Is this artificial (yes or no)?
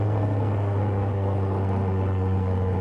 yes